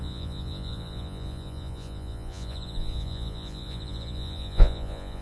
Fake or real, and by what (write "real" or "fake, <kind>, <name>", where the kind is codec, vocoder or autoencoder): fake, vocoder, Vocos